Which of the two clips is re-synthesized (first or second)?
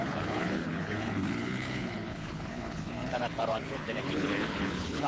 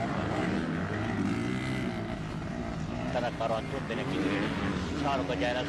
first